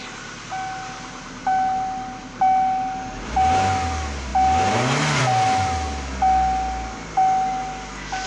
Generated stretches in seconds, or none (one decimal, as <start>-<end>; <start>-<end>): none